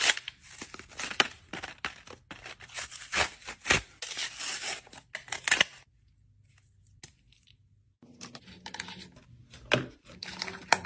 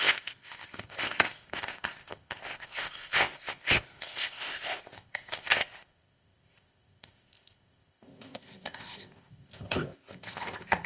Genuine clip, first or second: first